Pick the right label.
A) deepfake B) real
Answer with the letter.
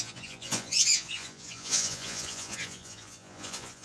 A